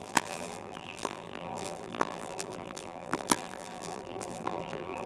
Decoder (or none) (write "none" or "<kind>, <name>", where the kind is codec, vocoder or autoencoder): vocoder, BigVGAN v2